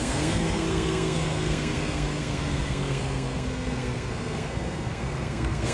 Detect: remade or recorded remade